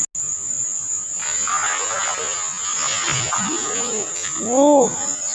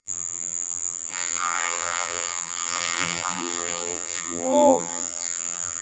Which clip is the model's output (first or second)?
second